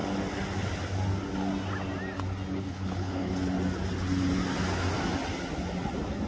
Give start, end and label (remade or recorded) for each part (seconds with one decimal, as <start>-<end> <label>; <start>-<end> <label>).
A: 0.0-2.6 recorded; 2.6-3.3 remade; 3.3-6.3 recorded